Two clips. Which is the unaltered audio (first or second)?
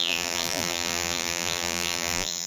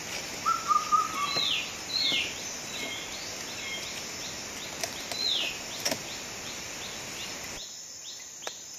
second